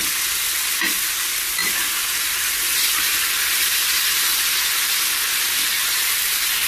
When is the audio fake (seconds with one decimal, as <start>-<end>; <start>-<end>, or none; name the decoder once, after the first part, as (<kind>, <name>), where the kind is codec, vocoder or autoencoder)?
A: 1.6-3.0 (vocoder, BigVGAN v2); 5.8-6.7

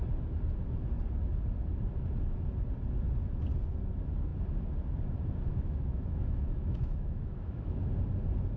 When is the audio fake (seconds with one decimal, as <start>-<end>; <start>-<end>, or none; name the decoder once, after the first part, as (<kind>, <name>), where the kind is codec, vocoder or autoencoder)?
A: 5.5-7.8 (autoencoder, DAC-VAE)

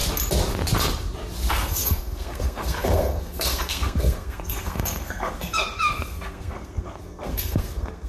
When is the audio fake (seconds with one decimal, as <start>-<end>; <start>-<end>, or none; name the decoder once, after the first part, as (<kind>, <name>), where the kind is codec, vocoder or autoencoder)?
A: 1.5-8.1 (codec, SNAC)

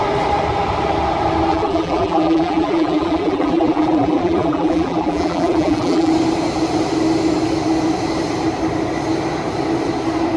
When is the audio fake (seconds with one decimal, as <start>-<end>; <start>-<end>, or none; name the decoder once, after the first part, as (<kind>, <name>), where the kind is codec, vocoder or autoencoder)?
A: 1.5-6.1 (vocoder, BigVGAN v2)

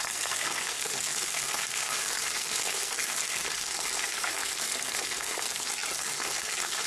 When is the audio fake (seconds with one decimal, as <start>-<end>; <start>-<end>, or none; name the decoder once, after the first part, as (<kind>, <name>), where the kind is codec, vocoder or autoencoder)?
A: 0.0-6.9 (codec, SNAC)

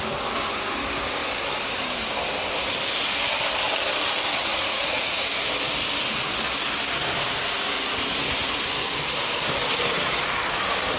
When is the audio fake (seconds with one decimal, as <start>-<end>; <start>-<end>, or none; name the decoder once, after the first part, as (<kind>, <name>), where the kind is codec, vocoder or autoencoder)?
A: 4.5-5.2 (vocoder, Vocos)

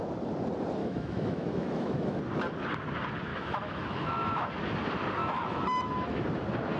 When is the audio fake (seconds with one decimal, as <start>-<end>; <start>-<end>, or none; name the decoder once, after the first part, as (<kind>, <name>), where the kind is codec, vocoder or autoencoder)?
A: 0.8-2.2 (autoencoder, DAC-VAE); 3.3-4.5; 5.2-6.2

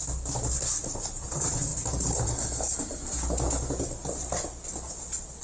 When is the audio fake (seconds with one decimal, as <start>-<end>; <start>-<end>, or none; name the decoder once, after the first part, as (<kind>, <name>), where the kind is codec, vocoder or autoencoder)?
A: none